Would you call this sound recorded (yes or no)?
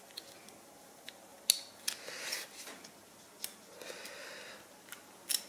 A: yes